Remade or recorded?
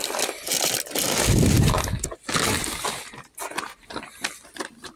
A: recorded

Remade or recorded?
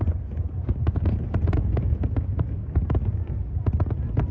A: remade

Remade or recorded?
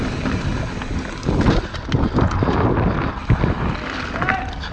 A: recorded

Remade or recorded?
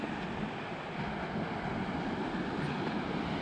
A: recorded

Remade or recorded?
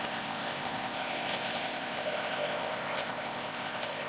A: remade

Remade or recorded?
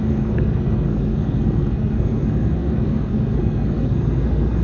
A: remade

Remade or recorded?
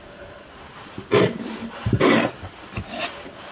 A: recorded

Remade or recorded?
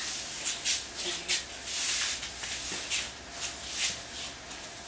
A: recorded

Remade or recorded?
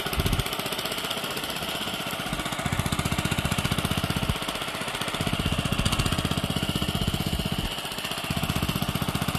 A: recorded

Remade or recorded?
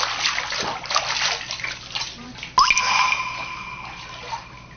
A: recorded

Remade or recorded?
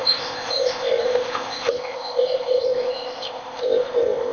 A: remade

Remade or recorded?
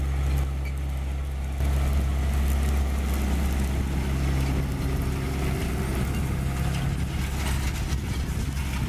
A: recorded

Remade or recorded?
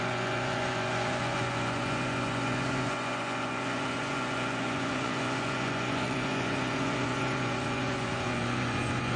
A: remade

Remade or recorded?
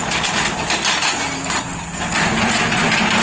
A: recorded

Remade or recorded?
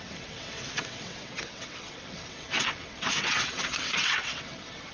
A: remade